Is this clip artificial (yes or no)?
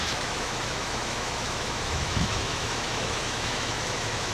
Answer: yes